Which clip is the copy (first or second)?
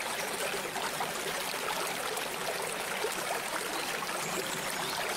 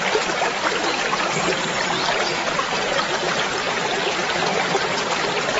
second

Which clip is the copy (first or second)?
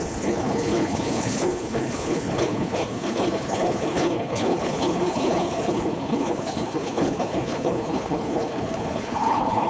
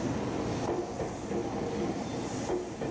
first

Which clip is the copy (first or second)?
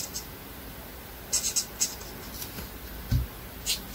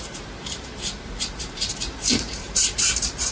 second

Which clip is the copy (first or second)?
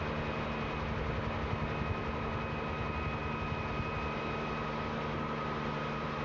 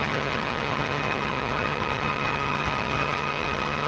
second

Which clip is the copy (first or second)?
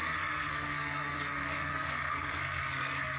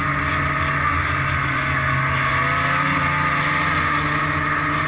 first